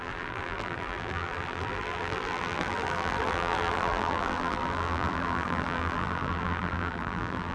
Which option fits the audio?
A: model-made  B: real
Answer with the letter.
A